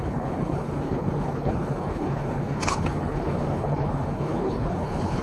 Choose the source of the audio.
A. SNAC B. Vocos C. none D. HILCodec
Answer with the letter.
D